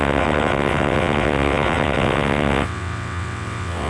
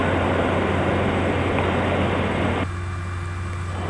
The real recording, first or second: second